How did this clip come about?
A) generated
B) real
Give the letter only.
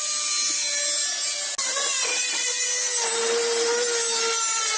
B